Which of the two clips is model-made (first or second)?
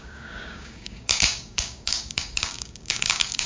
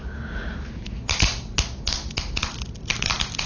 first